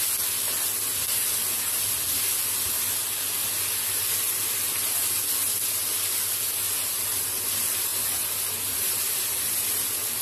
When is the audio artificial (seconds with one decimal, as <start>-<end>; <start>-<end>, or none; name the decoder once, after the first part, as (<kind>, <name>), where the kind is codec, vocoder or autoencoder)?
none